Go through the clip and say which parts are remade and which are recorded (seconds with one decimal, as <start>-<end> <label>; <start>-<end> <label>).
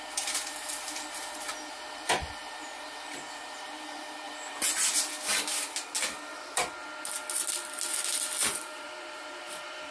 0.0-4.7 remade; 4.7-8.4 recorded; 8.4-9.9 remade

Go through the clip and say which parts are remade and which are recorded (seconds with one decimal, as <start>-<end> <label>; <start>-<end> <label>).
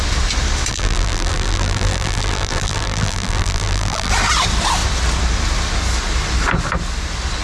0.0-0.7 recorded; 0.7-4.1 remade; 4.1-7.4 recorded